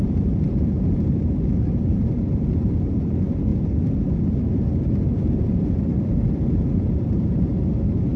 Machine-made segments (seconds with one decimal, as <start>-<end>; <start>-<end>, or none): 0.0-3.5; 5.4-7.5